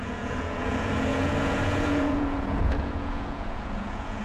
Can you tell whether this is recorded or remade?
remade